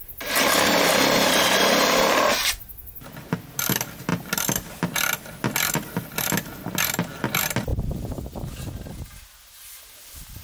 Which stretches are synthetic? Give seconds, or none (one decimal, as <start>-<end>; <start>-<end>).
none